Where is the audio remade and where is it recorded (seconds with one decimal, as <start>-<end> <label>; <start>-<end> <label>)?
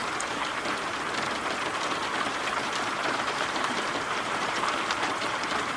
0.0-1.2 remade; 1.2-2.3 recorded; 2.3-5.8 remade